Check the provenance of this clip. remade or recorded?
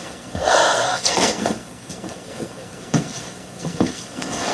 remade